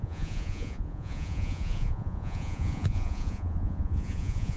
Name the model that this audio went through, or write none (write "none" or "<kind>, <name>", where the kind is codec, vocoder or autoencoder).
vocoder, Vocos